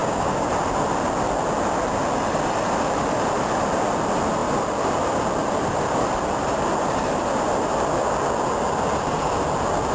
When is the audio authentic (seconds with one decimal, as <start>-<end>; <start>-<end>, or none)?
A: 0.5-9.9